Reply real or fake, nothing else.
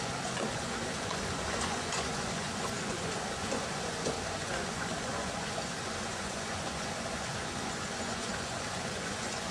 fake